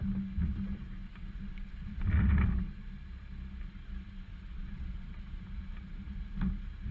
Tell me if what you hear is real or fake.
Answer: real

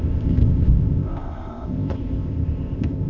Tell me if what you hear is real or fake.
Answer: fake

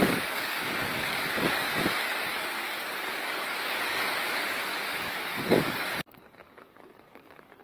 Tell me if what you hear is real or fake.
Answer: fake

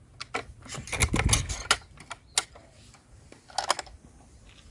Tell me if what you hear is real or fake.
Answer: real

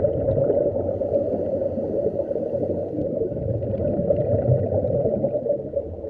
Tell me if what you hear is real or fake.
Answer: real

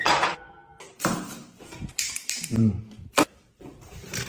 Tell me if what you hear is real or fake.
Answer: fake